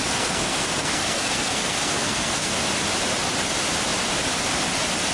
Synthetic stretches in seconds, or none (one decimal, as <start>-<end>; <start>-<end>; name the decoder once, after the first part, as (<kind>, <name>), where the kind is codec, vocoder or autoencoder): 0.0-2.5 (codec, SNAC)